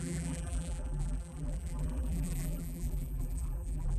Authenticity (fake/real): fake